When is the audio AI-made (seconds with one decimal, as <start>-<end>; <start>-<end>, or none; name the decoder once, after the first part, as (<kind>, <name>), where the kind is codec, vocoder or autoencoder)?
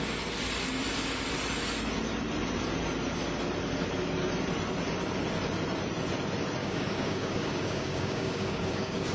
6.6-9.1 (codec, DAC)